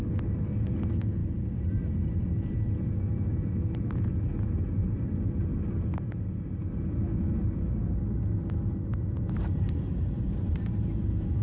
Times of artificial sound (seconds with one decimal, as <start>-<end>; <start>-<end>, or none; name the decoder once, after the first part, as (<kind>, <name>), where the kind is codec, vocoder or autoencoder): 0.0-11.4 (vocoder, BigVGAN v2)

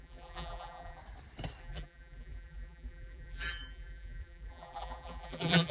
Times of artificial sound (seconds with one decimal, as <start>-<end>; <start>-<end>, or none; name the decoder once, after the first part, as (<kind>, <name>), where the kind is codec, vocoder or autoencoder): 0.0-1.0 (vocoder, BigVGAN v2); 1.6-5.7

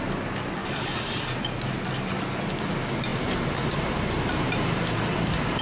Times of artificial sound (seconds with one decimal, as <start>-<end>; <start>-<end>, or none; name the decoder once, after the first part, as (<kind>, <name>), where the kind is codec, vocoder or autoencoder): 0.6-1.8 (vocoder, BigVGAN v2); 3.1-5.6

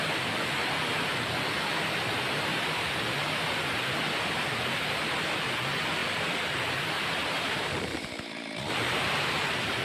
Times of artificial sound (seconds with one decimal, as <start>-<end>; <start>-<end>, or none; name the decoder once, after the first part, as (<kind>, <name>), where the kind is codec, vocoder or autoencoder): 6.0-9.8 (vocoder, BigVGAN v2)

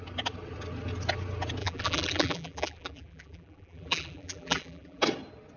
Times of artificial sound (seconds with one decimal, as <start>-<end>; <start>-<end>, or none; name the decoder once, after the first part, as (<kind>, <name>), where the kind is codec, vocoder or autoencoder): 1.6-5.0 (vocoder, BigVGAN v2)

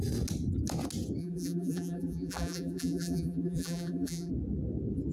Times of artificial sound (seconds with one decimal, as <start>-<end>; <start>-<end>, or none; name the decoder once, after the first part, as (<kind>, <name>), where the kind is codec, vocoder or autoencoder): 1.2-4.3 (vocoder, BigVGAN v2)

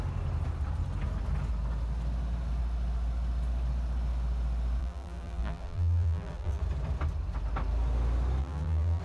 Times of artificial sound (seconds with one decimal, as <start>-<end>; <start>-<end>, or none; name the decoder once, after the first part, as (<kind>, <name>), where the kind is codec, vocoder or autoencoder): 4.8-6.6 (vocoder, BigVGAN v2); 8.4-9.0

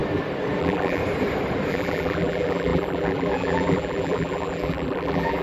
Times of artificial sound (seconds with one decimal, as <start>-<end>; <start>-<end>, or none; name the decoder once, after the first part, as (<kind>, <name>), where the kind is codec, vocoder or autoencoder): 0.6-1.0 (vocoder, BigVGAN v2); 1.7-5.4